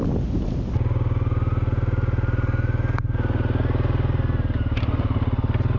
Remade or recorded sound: recorded